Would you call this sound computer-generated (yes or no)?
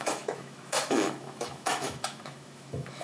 yes